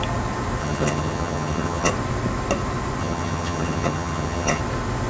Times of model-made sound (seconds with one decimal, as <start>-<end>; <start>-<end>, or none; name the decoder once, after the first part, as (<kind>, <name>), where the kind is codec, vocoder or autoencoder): 0.6-1.9 (vocoder, HiFi-GAN); 3.0-4.6